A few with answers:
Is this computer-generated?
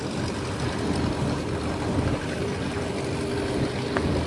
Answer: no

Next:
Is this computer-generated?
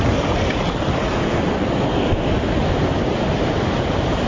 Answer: no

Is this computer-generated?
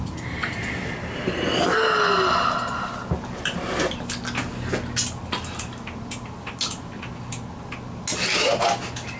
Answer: no